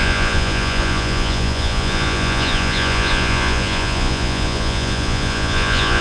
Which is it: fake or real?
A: fake